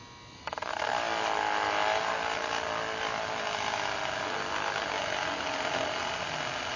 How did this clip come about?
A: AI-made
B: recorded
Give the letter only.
B